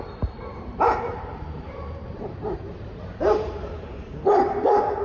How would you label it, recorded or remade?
remade